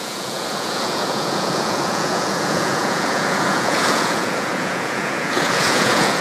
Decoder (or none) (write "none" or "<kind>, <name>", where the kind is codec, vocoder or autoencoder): vocoder, Vocos